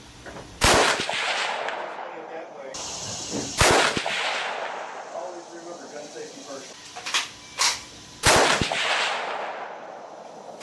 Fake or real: real